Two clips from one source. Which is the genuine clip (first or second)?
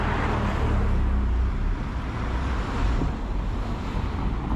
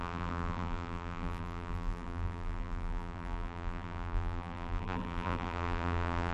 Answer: first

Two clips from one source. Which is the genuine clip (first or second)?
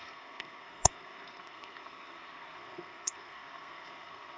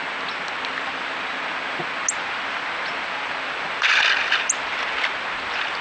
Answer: second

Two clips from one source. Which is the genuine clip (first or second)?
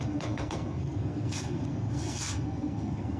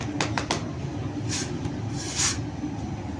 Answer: second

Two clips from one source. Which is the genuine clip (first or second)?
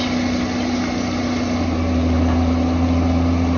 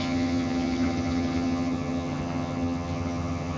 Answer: first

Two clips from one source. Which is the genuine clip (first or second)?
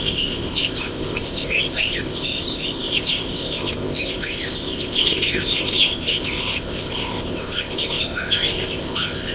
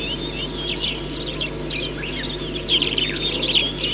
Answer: second